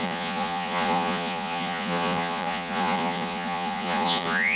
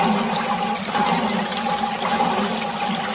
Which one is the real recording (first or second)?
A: second